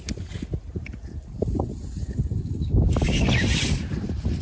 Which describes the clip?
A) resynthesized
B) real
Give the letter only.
B